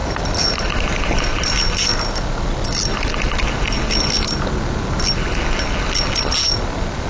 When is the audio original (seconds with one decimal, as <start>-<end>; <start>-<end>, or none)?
0.0-7.1